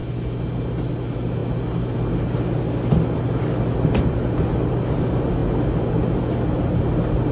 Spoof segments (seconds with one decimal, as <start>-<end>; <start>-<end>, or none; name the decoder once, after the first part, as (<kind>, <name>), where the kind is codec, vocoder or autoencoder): none

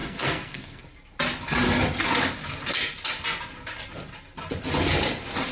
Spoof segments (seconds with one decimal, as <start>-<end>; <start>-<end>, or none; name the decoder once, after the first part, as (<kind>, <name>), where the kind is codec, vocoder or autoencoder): 0.0-0.8 (codec, SNAC)

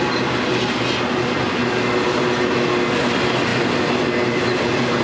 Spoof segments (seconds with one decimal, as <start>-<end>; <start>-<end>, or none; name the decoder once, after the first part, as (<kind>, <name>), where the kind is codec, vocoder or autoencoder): none

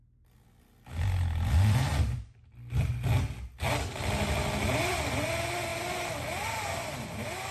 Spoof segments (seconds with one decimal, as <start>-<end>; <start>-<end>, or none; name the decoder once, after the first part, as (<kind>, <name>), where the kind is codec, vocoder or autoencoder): none

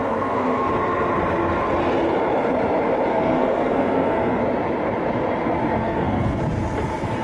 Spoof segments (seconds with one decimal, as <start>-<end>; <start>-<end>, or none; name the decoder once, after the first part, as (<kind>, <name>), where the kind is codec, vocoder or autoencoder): 0.0-0.7 (codec, SNAC); 3.1-4.4; 5.8-6.4

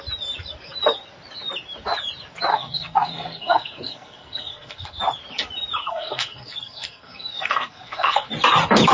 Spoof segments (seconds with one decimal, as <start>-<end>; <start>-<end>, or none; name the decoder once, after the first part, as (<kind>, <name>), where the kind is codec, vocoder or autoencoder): 2.5-5.0 (codec, SNAC); 5.8-8.3